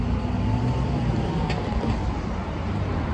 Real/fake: real